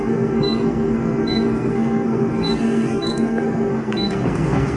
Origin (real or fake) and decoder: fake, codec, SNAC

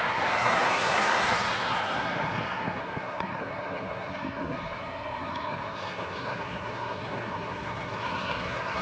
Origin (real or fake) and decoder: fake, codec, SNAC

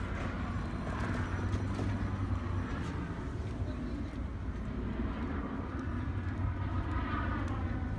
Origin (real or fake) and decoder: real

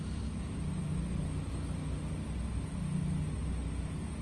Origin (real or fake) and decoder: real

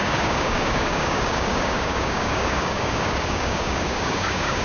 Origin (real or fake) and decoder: fake, codec, DAC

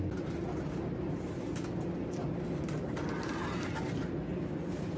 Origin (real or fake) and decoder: real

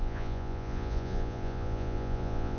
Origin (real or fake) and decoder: fake, vocoder, Vocos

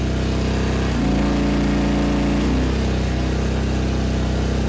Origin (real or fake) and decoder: real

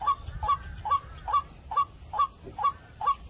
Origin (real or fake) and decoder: real